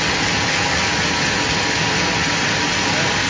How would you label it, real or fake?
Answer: real